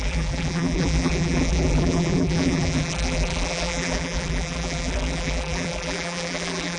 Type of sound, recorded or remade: remade